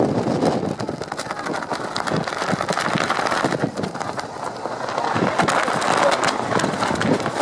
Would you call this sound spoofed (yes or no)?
no